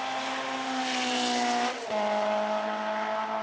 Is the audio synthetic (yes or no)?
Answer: no